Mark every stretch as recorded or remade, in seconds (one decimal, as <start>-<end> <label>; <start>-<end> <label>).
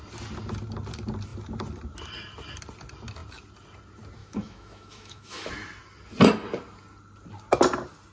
0.0-4.2 recorded; 4.2-5.5 remade; 5.5-8.1 recorded